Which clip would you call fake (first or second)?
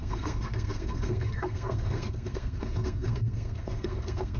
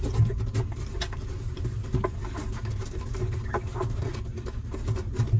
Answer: first